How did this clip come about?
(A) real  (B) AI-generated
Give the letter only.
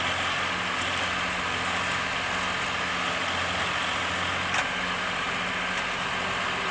A